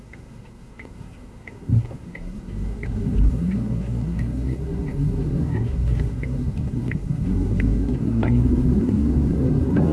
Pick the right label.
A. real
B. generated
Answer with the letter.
B